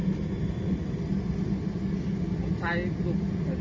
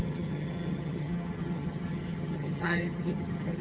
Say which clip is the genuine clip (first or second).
first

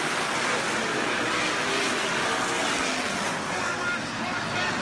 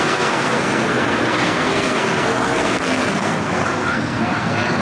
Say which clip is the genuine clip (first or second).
first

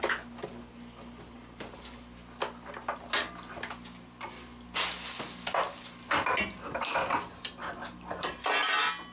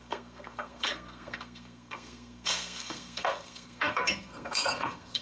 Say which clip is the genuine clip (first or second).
first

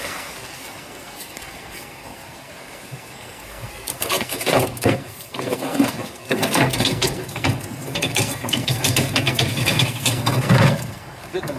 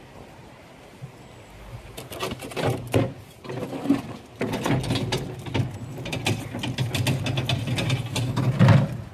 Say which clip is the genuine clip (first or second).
second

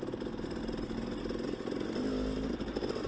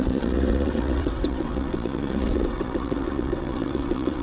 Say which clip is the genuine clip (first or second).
first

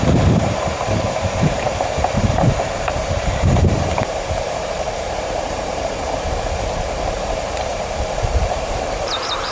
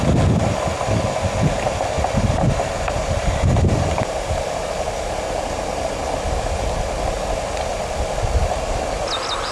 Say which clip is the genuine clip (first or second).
second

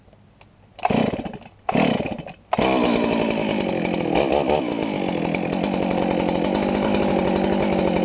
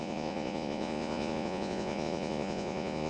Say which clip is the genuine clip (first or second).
first